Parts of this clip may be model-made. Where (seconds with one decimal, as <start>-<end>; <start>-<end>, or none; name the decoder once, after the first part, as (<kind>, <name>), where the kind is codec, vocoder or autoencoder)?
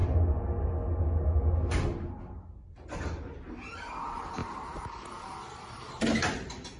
none